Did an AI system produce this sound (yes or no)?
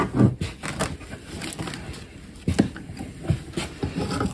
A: no